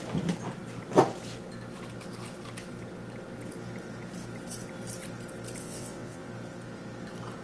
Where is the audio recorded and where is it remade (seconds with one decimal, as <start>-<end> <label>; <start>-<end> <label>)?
0.0-5.6 recorded; 5.6-6.3 remade; 6.3-7.4 recorded